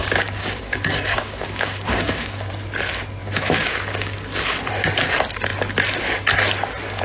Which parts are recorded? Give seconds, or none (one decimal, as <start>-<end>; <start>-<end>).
2.5-3.2; 4.7-7.0